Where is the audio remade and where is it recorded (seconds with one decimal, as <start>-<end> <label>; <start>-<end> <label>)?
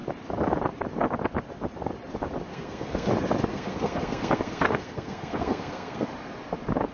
0.0-2.5 recorded; 2.5-3.1 remade; 3.1-3.5 recorded; 3.5-6.1 remade; 6.1-6.9 recorded